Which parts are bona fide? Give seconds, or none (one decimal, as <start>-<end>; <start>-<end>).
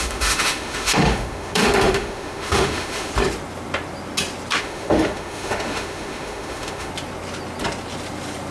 3.1-4.6; 6.9-8.5